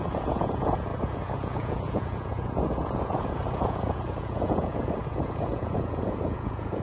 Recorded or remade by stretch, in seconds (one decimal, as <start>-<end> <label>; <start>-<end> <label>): 0.0-6.8 remade